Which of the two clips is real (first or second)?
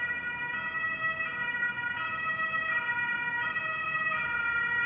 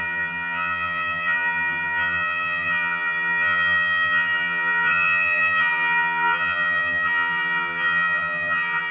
first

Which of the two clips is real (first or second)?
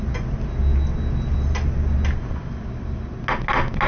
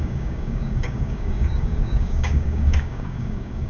first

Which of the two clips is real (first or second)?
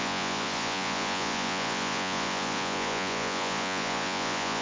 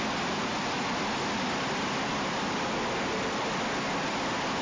second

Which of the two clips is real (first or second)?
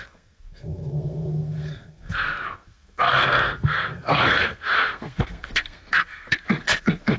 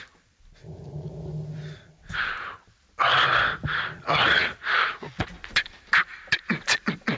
second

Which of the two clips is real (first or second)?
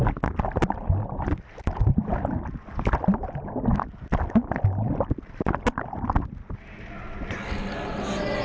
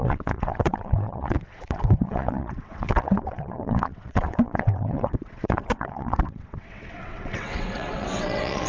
first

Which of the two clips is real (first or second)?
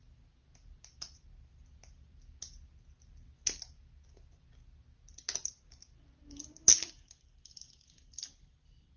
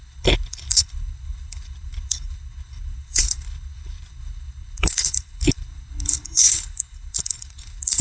first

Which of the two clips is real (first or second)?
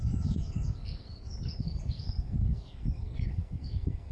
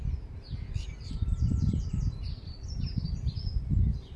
second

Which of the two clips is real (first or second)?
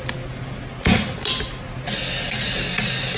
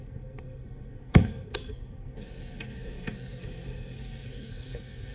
first